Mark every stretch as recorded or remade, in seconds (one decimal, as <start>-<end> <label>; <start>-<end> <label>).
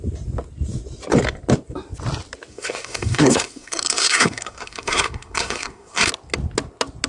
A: 0.0-2.5 recorded; 2.5-6.1 remade; 6.1-7.1 recorded